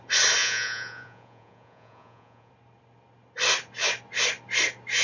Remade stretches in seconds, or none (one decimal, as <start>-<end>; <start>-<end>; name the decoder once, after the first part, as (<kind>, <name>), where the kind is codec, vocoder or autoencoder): 0.4-2.5 (vocoder, Vocos)